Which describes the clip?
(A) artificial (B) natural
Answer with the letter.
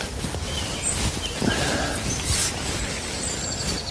B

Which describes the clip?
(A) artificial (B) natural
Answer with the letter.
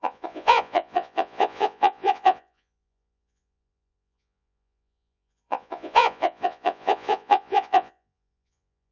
A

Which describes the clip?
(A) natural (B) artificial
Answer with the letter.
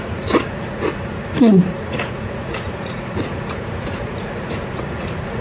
B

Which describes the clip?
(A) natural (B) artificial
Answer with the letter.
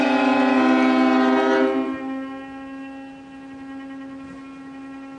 A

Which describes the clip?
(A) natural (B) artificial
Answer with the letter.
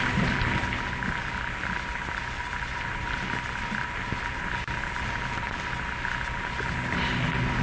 A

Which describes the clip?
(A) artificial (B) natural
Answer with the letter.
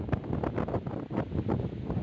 B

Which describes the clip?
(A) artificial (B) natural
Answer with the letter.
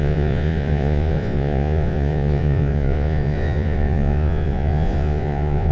A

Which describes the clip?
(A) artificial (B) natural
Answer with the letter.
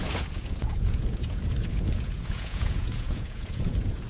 A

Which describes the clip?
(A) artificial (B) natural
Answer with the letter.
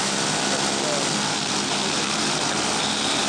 B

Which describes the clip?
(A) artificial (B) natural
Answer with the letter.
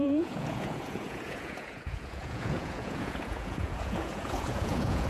A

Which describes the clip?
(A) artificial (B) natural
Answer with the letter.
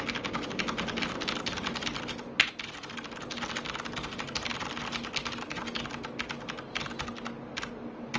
B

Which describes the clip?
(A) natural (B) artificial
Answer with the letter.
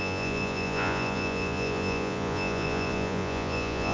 B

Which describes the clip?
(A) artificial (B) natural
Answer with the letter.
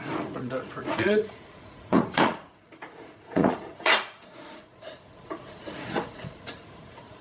A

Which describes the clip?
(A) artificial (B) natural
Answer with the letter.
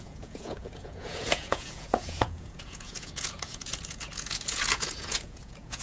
A